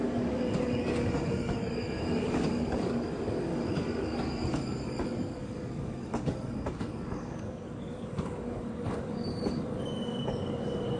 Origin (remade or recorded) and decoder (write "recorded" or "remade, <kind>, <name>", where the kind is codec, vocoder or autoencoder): remade, codec, DAC